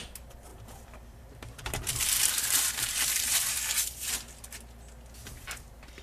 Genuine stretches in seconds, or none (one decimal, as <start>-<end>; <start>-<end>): 0.0-0.5; 4.1-5.2